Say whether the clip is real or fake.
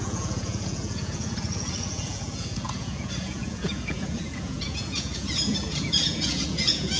fake